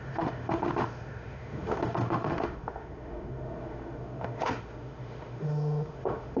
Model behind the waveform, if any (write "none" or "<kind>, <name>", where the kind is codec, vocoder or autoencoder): autoencoder, DAC-VAE